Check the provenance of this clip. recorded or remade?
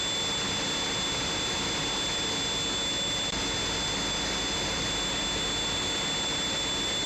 recorded